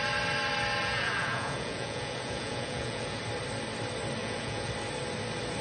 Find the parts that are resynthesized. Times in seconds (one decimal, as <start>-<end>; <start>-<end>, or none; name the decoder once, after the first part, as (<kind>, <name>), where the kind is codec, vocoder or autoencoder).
0.8-3.2 (vocoder, Vocos); 4.2-4.7